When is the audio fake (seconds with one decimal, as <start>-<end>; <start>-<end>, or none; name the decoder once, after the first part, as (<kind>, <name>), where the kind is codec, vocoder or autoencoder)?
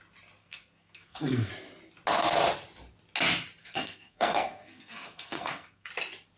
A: 0.4-1.5 (codec, SNAC); 3.6-5.9